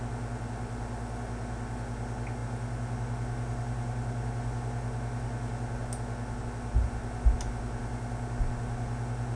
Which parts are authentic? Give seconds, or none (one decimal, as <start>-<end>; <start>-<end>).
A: 0.0-9.4